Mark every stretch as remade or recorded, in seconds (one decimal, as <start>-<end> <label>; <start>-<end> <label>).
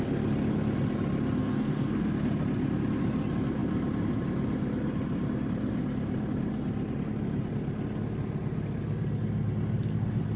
0.0-1.4 recorded; 1.4-2.1 remade; 2.1-10.4 recorded